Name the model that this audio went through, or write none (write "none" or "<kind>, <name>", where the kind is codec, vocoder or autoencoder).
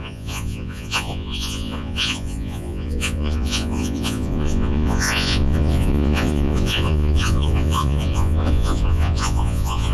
vocoder, Vocos